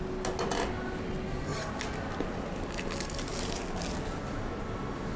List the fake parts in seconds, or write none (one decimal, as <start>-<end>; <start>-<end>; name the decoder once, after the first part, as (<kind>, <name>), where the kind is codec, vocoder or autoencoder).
none